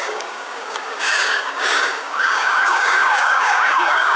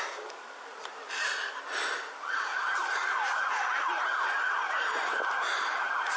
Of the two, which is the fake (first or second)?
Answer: first